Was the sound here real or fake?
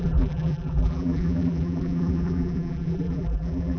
fake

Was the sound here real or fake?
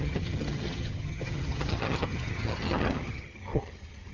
fake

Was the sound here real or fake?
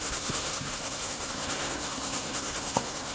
fake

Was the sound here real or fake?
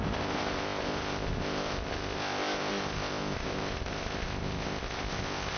fake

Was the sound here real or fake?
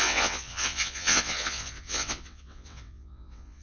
fake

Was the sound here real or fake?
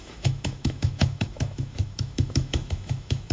fake